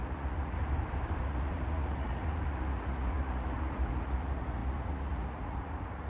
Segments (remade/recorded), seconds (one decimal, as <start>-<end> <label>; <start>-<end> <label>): 0.0-0.6 remade; 0.6-1.2 recorded; 1.2-6.1 remade